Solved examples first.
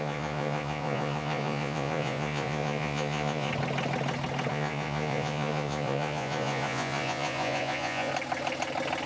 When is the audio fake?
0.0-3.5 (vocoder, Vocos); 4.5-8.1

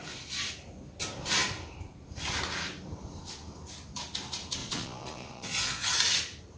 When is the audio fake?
4.6-5.9 (vocoder, Vocos)